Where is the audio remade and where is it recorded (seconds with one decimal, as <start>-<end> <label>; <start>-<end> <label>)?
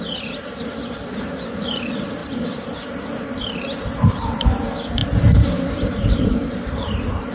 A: 0.0-7.3 remade